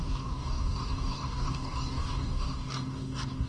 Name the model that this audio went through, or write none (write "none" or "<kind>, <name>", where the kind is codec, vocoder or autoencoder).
codec, DAC